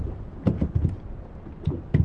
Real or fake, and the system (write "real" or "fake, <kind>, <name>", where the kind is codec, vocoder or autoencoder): real